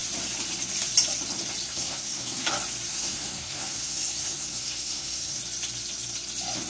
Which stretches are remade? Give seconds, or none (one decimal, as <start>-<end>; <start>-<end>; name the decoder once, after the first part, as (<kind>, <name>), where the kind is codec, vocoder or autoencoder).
1.7-2.5 (codec, SNAC); 2.9-5.4

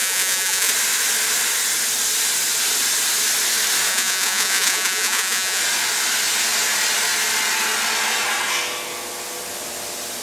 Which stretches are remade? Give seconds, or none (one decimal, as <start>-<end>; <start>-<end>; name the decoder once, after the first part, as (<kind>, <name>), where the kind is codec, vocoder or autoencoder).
0.0-0.7 (vocoder, Vocos); 3.9-5.6

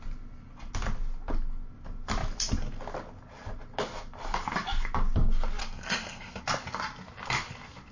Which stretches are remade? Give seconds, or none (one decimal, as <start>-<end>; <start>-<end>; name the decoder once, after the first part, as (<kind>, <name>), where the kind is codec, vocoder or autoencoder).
5.6-6.4 (codec, SNAC)

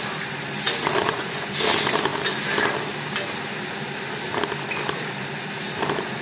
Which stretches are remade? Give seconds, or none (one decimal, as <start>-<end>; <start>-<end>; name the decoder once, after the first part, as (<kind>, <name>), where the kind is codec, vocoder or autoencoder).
1.0-1.5 (vocoder, Vocos)

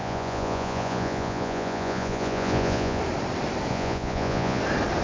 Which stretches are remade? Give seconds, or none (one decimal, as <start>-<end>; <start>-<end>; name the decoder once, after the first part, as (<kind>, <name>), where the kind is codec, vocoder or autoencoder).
0.0-3.0 (vocoder, Vocos); 3.7-4.6